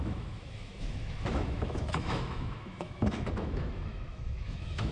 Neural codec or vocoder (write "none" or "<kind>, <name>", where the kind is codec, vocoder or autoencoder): autoencoder, DAC-VAE